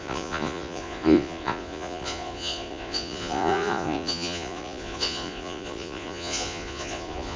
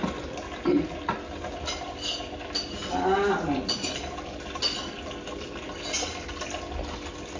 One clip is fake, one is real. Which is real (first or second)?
second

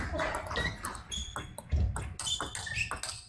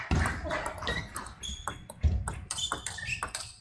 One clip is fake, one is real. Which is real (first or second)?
first